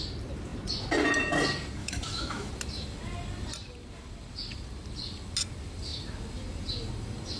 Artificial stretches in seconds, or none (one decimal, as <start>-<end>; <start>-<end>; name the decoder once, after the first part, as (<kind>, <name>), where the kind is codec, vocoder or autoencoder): 1.8-2.5 (autoencoder, DAC-VAE)